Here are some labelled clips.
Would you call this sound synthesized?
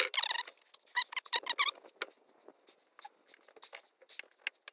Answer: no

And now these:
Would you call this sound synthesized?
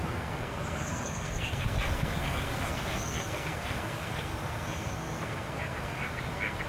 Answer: yes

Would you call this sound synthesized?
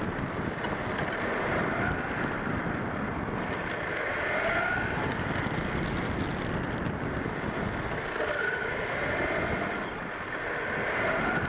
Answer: no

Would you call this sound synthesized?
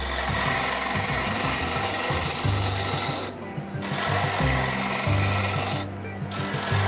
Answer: no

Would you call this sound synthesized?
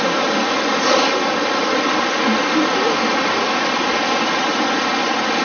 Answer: no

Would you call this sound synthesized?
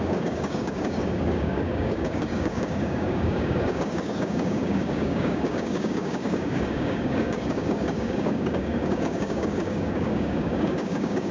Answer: yes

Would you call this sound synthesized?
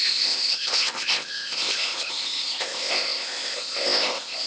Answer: yes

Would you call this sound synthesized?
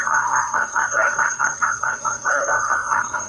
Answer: yes